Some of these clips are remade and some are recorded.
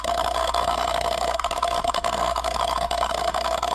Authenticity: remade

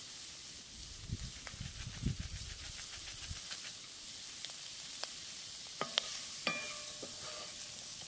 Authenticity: recorded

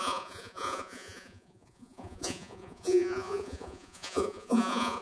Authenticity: remade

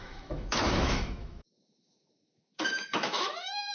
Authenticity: remade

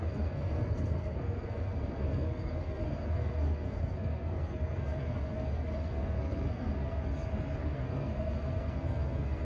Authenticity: remade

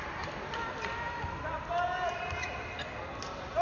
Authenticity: recorded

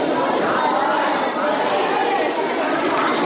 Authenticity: recorded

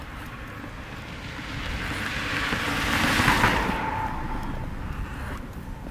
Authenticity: recorded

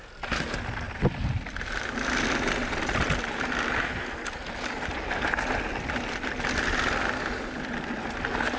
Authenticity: recorded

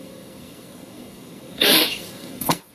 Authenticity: remade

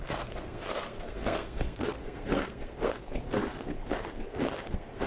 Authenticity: remade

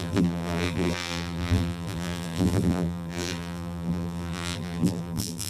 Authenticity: remade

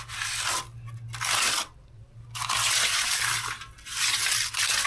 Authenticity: recorded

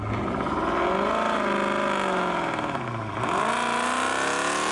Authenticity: recorded